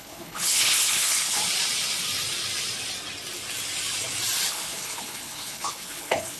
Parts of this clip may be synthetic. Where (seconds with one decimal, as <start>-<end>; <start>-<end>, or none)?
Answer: 0.0-1.4; 4.5-6.4